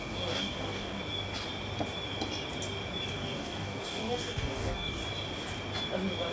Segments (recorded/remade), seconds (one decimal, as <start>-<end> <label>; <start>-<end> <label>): 0.0-1.0 remade; 1.0-3.1 recorded; 3.1-5.0 remade; 5.0-6.3 recorded